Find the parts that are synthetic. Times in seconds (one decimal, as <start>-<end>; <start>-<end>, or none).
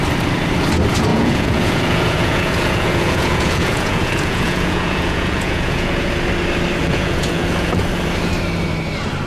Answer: 1.1-6.1; 6.8-7.8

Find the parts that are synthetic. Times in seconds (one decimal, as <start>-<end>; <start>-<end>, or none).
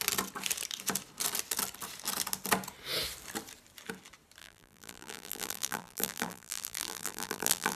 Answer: 4.4-7.8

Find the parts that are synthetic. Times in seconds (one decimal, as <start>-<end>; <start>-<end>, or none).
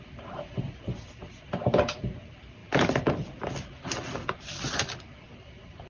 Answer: none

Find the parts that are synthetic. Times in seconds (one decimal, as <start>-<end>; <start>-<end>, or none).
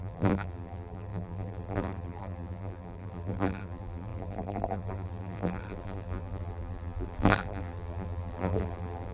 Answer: 0.0-9.1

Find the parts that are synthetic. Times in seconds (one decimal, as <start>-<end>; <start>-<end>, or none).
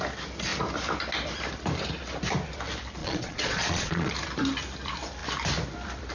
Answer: 3.0-4.1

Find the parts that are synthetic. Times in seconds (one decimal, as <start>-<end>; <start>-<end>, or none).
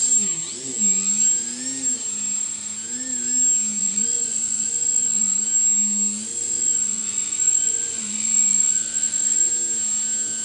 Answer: 3.8-5.3; 6.4-9.5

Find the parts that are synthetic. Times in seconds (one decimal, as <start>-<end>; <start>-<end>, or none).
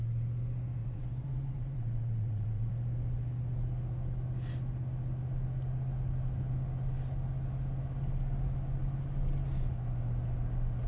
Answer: 0.8-2.7